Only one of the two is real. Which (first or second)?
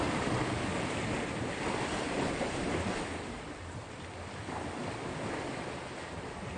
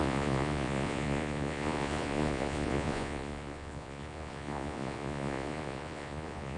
first